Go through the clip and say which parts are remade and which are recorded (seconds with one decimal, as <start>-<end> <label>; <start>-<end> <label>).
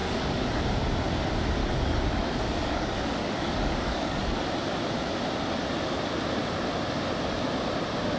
0.0-0.6 remade; 0.6-1.6 recorded; 1.6-4.4 remade; 4.4-8.2 recorded